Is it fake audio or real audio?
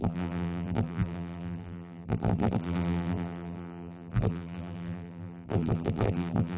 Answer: fake